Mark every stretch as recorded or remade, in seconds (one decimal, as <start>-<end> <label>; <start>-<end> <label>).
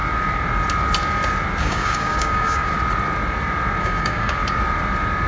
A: 0.0-1.6 recorded; 1.6-2.7 remade; 2.7-3.8 recorded; 3.8-4.4 remade; 4.4-5.3 recorded